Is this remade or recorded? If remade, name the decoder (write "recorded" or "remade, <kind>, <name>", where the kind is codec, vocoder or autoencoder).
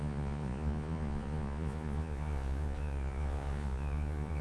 remade, vocoder, Vocos